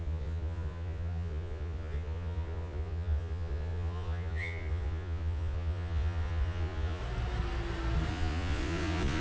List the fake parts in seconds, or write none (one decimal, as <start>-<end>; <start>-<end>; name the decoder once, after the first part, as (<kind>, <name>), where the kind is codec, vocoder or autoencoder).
0.0-7.0 (vocoder, Vocos); 8.1-9.2